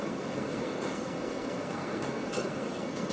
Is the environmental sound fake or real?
fake